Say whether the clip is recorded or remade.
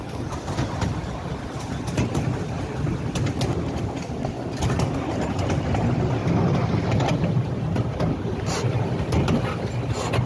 recorded